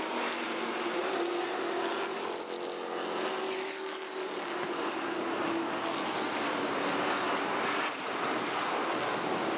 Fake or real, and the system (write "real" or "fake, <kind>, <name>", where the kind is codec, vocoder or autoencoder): real